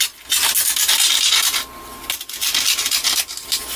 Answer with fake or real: real